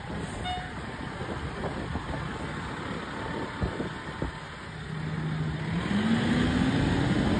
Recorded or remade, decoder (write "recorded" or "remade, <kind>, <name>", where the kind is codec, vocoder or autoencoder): recorded